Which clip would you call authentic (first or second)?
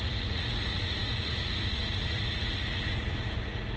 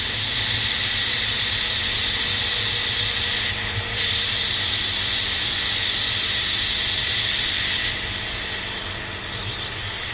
second